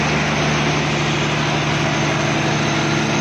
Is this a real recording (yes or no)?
yes